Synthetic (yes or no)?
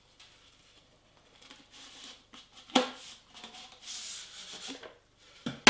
no